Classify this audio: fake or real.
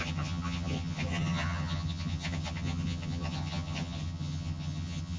fake